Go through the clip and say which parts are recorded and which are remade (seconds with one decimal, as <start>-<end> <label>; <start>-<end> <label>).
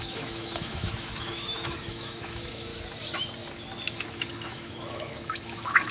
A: 0.0-2.7 remade; 2.7-3.9 recorded; 3.9-5.9 remade